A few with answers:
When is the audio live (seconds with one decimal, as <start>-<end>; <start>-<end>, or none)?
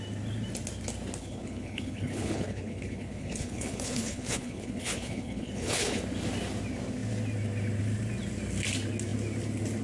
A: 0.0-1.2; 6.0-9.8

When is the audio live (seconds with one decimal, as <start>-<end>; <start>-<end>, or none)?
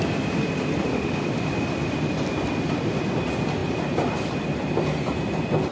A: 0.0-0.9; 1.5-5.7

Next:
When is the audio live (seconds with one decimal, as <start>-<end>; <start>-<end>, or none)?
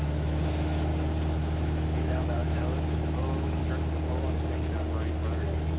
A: 0.9-1.4; 3.6-5.8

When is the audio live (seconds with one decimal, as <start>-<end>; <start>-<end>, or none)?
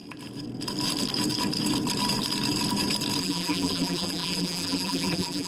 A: 0.0-3.2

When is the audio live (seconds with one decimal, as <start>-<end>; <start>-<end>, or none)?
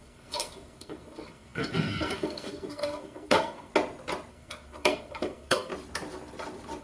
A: 3.7-4.3; 5.7-6.8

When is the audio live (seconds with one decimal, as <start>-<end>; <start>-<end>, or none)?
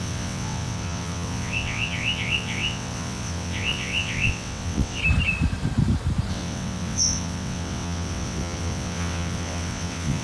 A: 5.0-6.3